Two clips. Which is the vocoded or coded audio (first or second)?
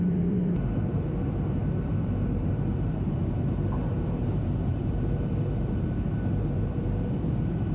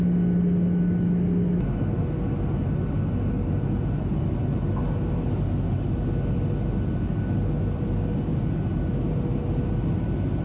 first